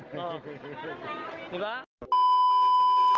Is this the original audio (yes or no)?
yes